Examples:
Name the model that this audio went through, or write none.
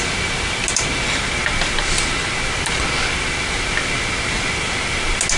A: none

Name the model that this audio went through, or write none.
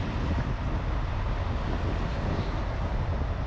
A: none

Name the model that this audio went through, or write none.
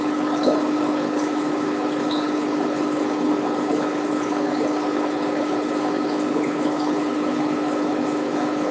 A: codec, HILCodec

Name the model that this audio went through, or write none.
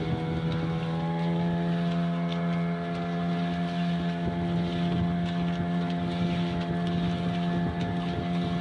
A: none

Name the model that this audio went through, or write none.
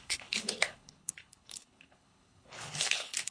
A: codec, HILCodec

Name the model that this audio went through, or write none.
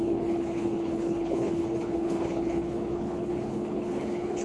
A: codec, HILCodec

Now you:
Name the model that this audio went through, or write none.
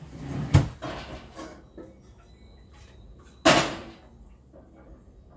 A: none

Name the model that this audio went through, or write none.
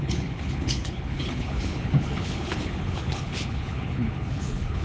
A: codec, HILCodec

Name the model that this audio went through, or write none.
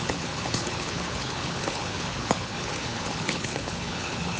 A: codec, HILCodec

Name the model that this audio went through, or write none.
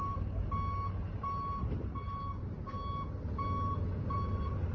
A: none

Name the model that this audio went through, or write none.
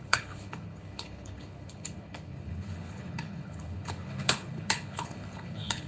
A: codec, HILCodec